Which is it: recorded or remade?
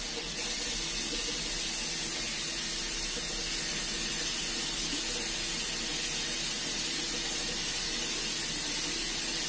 recorded